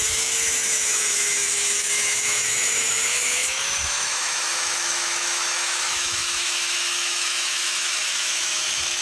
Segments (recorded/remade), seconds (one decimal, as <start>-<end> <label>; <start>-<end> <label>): 0.0-9.0 remade